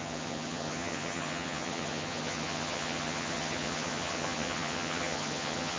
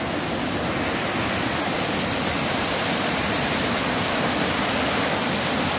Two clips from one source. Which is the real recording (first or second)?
second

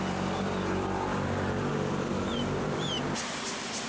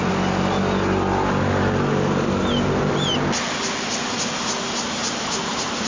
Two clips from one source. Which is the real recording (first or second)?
second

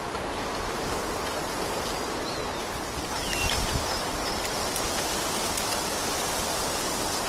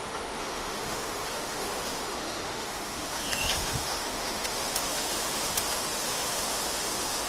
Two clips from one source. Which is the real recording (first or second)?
first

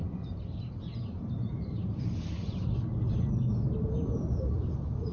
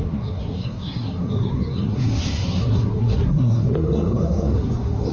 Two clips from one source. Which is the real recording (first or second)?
first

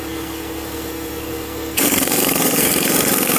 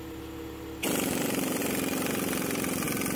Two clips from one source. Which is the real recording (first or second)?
second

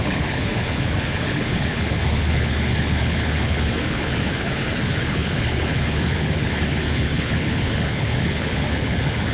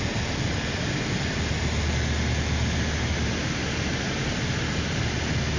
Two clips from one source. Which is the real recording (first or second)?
second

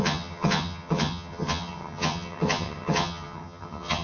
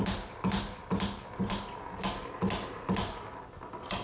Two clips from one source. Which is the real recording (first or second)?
second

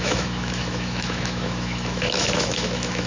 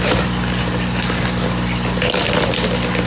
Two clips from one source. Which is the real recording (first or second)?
second